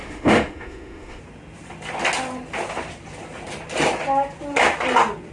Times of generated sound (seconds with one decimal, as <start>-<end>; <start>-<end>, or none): 0.0-1.2